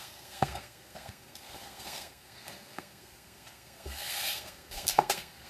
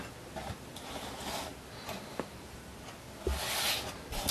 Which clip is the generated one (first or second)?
first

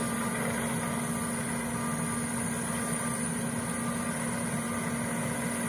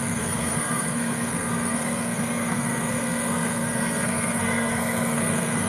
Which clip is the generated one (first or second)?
second